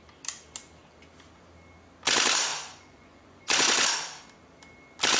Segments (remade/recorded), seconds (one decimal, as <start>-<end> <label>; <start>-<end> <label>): 0.0-2.5 recorded; 2.5-3.9 remade; 3.9-5.2 recorded